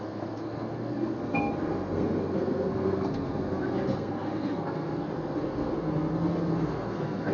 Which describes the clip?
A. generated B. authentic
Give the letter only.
A